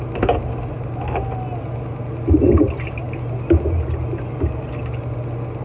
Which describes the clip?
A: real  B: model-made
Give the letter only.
A